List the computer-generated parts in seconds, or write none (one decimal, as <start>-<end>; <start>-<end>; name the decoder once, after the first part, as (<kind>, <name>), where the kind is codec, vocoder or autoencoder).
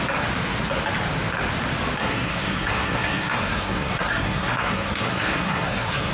2.0-6.1 (codec, SNAC)